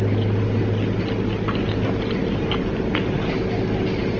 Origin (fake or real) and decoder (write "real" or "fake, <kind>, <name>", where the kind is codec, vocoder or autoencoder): real